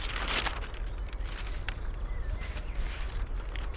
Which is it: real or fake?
fake